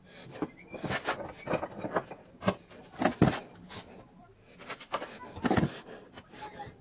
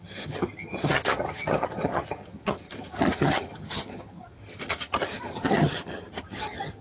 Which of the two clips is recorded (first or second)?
first